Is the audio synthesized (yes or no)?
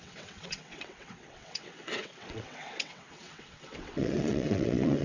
yes